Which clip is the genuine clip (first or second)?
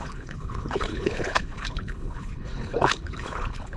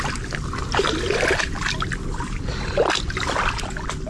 second